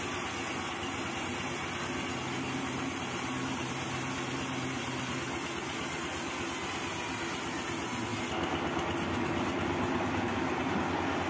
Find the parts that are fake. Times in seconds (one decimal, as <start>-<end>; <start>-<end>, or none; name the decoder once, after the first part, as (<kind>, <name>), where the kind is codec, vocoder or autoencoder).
none